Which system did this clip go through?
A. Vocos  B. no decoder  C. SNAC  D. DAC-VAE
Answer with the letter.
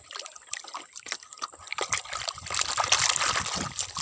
B